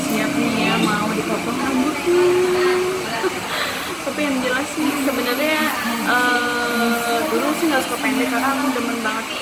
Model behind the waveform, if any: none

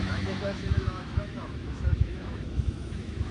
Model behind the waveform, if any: autoencoder, DAC-VAE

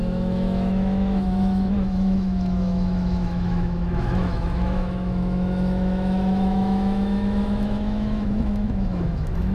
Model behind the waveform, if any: autoencoder, DAC-VAE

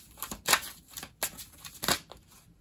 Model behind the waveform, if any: none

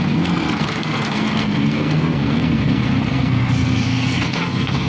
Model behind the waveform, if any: codec, SNAC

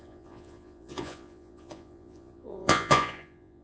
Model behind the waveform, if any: vocoder, Vocos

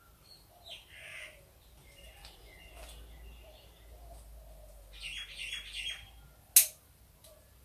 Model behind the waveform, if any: none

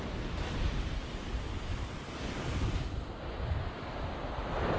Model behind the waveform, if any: none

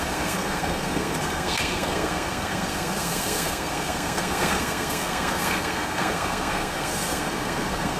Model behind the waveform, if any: codec, SNAC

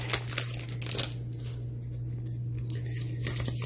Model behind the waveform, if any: none